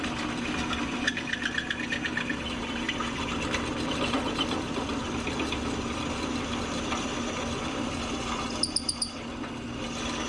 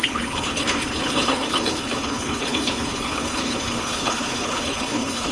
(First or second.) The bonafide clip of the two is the first